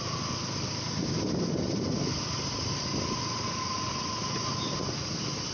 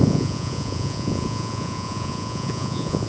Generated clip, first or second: second